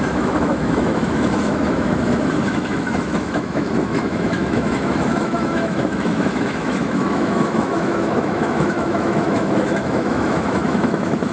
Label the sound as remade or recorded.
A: remade